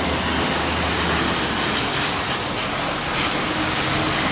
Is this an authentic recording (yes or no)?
yes